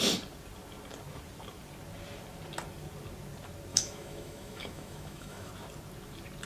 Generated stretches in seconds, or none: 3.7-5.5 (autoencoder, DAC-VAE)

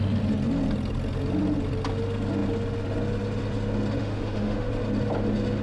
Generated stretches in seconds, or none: 4.0-4.7 (autoencoder, DAC-VAE)